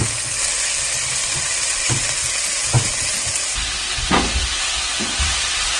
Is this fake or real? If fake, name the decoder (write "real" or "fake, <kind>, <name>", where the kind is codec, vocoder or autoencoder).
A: real